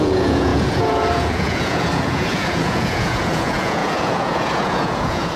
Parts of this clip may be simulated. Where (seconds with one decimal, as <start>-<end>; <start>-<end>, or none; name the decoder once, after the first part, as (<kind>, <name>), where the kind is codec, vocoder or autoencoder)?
0.0-5.4 (vocoder, Vocos)

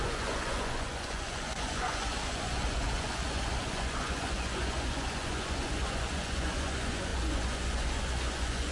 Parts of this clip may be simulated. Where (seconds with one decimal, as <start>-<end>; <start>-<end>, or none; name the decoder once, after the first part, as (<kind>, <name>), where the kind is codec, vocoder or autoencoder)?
0.0-8.7 (vocoder, Vocos)

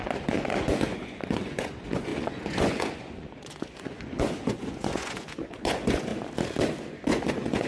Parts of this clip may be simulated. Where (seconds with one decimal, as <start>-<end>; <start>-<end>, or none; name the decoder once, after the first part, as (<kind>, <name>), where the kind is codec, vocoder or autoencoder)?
0.0-6.1 (vocoder, Vocos); 6.9-7.7

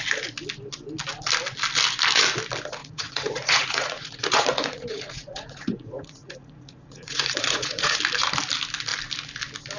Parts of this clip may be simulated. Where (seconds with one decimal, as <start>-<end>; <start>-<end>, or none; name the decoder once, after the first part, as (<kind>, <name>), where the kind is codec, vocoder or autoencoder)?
2.8-8.0 (vocoder, Vocos)

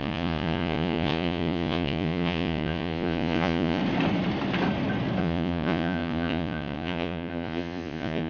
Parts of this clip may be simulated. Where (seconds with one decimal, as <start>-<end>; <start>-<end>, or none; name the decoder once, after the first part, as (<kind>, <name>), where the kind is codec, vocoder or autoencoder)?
0.0-3.8 (vocoder, Vocos); 5.2-8.3

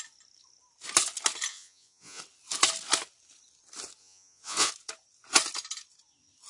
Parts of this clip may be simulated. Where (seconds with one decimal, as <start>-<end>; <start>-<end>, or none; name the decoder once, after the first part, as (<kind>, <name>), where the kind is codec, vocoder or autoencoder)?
1.5-2.2 (vocoder, Vocos); 4.0-4.7

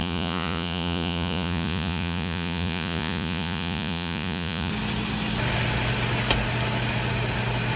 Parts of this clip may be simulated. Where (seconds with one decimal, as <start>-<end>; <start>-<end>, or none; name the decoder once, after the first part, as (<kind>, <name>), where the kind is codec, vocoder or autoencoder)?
0.0-4.7 (vocoder, Vocos)

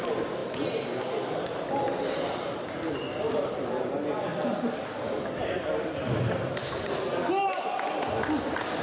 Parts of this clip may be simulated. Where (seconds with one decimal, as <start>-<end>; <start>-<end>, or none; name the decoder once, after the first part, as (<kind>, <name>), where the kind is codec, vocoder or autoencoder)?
none